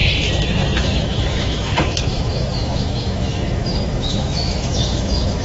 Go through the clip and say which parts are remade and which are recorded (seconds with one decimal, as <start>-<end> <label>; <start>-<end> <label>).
0.0-0.8 recorded; 0.8-5.4 remade